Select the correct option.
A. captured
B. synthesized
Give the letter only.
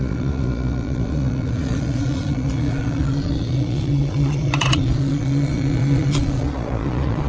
B